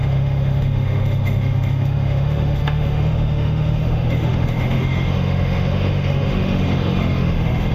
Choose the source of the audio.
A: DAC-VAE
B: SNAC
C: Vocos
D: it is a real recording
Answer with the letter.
A